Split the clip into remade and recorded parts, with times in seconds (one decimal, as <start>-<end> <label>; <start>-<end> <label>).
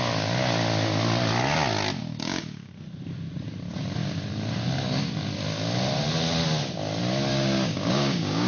0.0-2.0 recorded; 2.0-2.7 remade; 2.7-7.3 recorded; 7.3-8.5 remade